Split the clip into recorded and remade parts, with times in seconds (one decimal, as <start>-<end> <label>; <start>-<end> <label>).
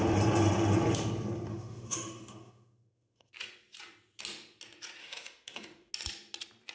0.0-1.5 recorded; 1.5-3.3 remade; 3.3-5.0 recorded; 5.0-5.9 remade; 5.9-6.7 recorded